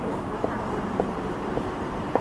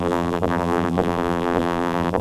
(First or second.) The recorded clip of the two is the first